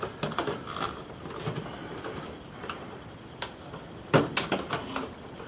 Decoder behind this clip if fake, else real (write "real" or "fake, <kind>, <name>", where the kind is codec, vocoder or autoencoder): real